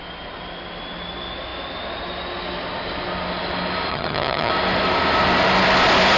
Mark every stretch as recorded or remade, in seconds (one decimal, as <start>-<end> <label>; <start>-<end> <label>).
0.0-3.9 recorded; 3.9-4.5 remade; 4.5-6.2 recorded